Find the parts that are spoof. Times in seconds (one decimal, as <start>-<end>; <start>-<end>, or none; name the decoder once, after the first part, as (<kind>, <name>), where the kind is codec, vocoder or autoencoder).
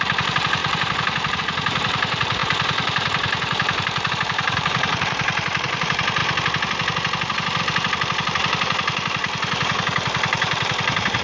0.0-6.2 (vocoder, BigVGAN v2); 7.6-9.2; 9.8-11.2